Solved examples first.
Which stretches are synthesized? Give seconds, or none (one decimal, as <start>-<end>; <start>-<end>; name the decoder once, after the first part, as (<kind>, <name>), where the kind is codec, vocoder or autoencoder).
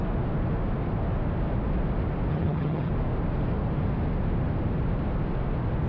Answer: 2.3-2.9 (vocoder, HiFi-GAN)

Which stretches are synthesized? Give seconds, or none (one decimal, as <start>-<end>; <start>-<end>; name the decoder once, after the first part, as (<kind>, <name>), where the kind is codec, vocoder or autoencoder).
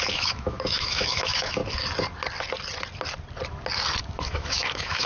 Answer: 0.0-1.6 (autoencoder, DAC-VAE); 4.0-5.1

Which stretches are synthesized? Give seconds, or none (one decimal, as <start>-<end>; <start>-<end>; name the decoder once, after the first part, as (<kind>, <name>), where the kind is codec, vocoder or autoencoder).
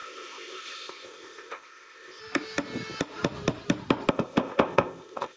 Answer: 0.0-2.2 (codec, ZipCodec); 4.1-5.4